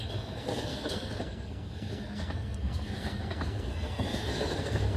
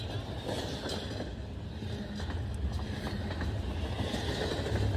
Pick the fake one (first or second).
first